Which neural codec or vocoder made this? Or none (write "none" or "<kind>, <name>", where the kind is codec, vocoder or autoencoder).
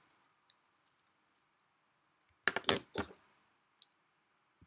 none